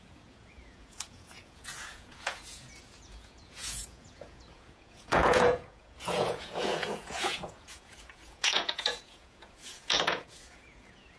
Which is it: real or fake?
fake